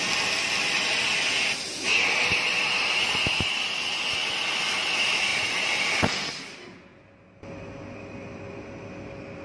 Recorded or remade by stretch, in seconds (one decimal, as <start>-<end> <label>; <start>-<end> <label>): 0.0-9.4 recorded